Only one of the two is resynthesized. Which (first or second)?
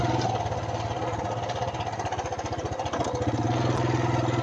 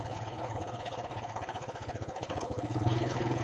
second